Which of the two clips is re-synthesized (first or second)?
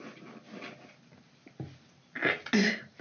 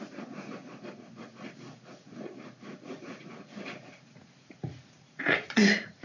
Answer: second